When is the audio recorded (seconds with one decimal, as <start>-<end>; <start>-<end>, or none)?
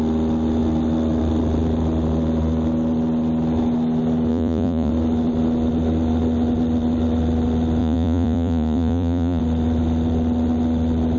0.0-4.3; 4.9-7.8; 9.4-11.2